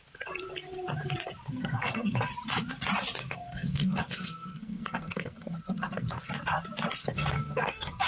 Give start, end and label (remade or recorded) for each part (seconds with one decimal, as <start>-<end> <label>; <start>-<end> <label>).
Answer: 0.0-1.5 recorded; 1.5-2.2 remade; 2.2-3.2 recorded; 3.2-6.3 remade; 6.3-7.0 recorded; 7.0-8.1 remade